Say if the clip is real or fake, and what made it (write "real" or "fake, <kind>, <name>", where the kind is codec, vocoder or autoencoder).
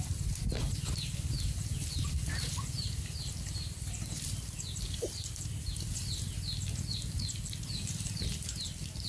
real